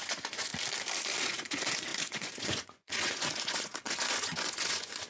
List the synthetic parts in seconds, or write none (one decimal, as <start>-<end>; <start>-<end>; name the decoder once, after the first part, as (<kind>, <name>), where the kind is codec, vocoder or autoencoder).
0.0-0.5 (vocoder, Vocos); 1.2-5.1